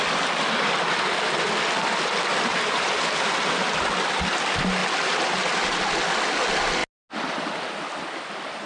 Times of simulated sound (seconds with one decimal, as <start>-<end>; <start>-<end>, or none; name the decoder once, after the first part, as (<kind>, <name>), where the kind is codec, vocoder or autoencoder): 2.5-3.9 (vocoder, BigVGAN v2)

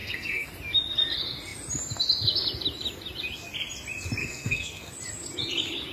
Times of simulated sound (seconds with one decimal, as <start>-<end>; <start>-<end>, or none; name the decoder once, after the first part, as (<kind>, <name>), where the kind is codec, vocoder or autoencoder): 0.0-0.5 (codec, SNAC); 4.2-4.9

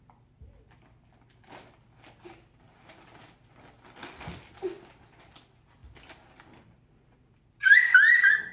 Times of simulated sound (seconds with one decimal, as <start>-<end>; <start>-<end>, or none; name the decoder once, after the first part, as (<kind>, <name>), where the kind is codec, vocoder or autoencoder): none

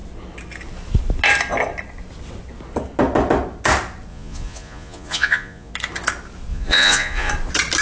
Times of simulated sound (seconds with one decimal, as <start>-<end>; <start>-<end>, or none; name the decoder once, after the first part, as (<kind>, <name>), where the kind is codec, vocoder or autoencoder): 4.1-5.7 (vocoder, Vocos); 6.5-7.3